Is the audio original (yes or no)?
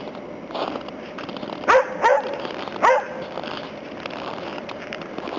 yes